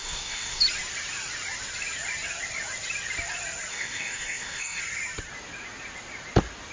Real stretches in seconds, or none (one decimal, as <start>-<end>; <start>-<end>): 0.6-3.7; 4.8-6.7